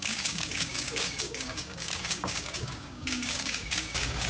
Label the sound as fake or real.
fake